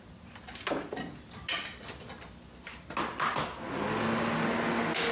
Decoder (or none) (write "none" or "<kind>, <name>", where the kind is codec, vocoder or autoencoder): none